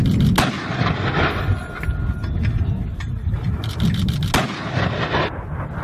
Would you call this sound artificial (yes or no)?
no